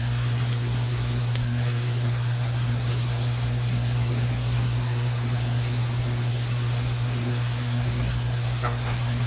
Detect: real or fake fake